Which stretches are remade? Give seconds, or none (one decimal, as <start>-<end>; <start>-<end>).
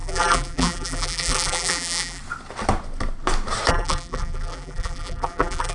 0.0-2.2; 3.7-5.7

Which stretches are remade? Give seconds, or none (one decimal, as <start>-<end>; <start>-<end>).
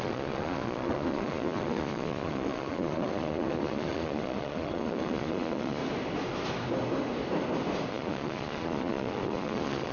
0.0-5.8; 7.9-9.9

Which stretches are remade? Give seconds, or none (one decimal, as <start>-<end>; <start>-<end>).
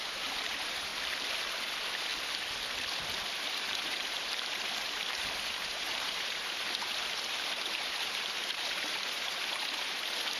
0.0-0.9; 1.5-2.1; 3.5-10.4